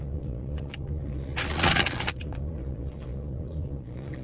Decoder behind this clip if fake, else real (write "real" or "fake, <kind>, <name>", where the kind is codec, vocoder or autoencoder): fake, vocoder, Vocos